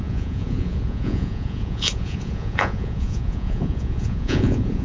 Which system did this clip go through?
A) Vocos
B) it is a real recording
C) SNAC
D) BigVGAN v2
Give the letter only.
A